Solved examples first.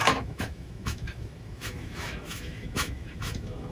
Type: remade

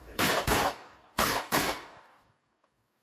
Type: remade